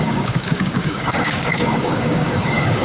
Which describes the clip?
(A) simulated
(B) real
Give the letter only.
A